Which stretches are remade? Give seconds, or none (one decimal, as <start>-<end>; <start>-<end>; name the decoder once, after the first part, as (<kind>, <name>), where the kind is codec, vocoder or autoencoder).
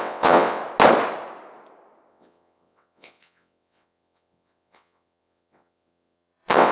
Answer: 0.0-0.6 (vocoder, WaveNeXt); 2.1-6.7